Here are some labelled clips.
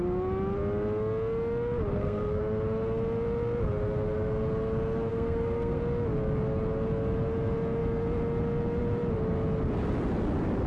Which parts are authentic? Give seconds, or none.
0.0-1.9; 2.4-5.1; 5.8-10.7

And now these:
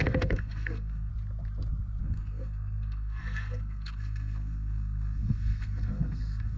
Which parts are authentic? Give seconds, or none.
1.1-2.0

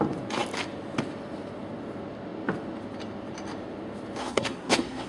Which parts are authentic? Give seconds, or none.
0.0-4.2

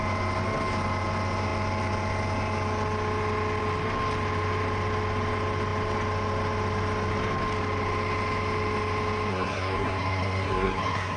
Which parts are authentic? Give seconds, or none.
0.0-9.3

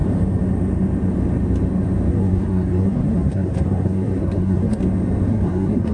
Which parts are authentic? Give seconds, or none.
0.0-2.1; 4.8-5.3

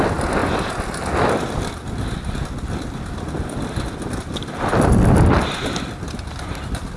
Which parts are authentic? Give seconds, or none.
0.0-7.0